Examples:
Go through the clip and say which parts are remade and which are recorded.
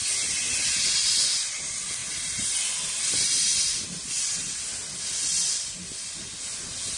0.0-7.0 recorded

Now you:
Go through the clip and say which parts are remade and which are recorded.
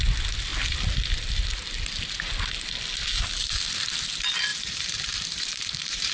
0.0-4.5 recorded; 4.5-6.1 remade